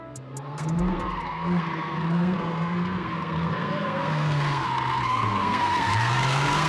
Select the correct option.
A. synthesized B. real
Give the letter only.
A